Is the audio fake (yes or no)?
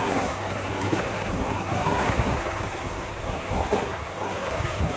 yes